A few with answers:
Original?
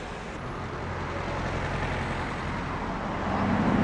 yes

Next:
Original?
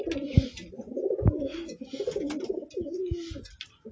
yes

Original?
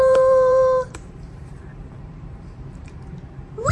no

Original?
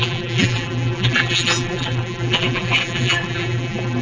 no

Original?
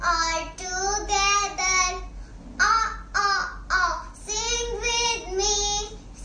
yes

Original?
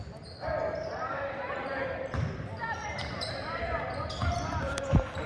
no